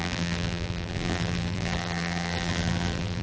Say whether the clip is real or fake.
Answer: fake